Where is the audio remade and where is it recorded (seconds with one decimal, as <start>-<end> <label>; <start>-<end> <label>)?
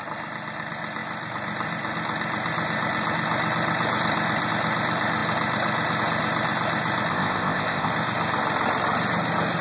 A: 0.0-7.1 recorded; 7.1-7.9 remade; 7.9-9.6 recorded